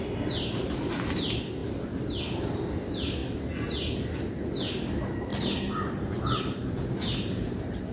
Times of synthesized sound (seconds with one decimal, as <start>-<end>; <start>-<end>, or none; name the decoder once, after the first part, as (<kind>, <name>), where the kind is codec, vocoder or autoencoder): 5.3-6.4 (vocoder, BigVGAN v2)